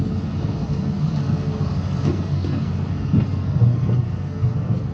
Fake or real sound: fake